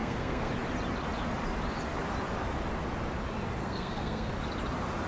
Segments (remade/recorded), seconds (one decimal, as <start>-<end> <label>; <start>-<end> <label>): 0.0-0.5 remade; 0.5-3.6 recorded; 3.6-4.3 remade; 4.3-5.1 recorded